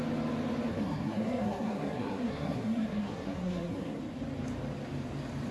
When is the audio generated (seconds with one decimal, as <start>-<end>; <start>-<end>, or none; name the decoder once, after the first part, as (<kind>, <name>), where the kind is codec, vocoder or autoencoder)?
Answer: 0.7-4.0 (codec, SNAC)